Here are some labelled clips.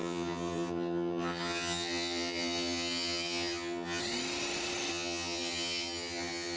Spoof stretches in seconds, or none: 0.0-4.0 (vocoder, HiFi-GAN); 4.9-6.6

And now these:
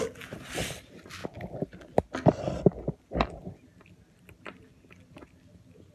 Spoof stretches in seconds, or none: none

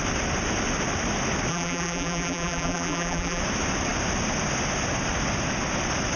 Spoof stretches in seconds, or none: 1.5-3.4 (vocoder, BigVGAN v2)

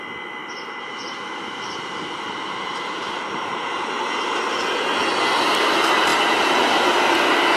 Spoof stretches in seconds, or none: 0.4-3.9 (vocoder, BigVGAN v2)

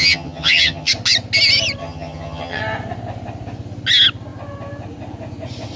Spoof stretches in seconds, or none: 0.0-0.9 (vocoder, HiFi-GAN); 1.8-2.6

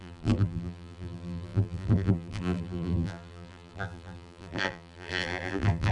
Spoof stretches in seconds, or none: 0.0-5.9 (vocoder, BigVGAN v2)

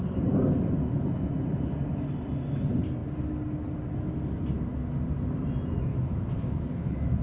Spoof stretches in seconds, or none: 5.9-7.2 (autoencoder, DAC-VAE)

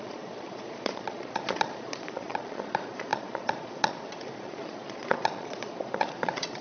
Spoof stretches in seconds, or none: 0.0-6.6 (vocoder, Vocos)